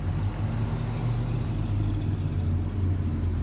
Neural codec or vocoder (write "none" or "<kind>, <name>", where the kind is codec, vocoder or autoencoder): none